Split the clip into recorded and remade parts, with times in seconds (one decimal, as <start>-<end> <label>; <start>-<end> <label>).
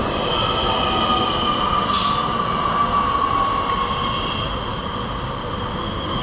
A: 0.0-6.2 recorded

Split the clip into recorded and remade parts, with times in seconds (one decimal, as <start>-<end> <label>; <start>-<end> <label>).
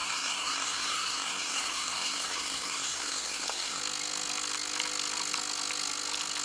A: 0.0-3.8 remade; 3.8-6.4 recorded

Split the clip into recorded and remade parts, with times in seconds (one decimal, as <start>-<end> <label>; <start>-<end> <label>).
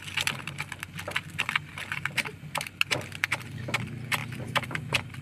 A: 0.0-5.2 recorded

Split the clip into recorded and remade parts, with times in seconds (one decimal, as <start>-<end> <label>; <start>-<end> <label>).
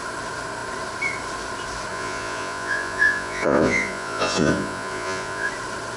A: 0.0-1.9 recorded; 1.9-5.5 remade; 5.5-6.0 recorded